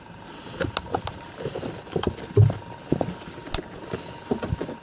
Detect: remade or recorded recorded